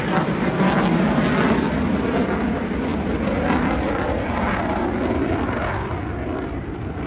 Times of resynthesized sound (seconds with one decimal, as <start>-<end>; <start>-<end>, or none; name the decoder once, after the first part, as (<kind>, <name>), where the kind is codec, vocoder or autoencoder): none